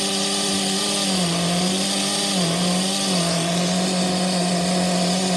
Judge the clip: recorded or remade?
recorded